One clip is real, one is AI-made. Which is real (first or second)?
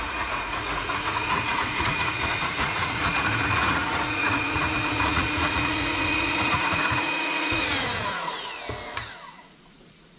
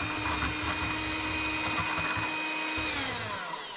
second